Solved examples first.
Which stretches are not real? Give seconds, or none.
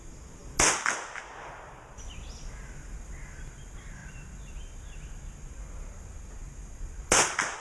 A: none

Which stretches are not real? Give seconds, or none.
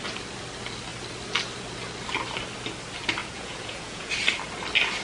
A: 3.2-4.1 (vocoder, Vocos)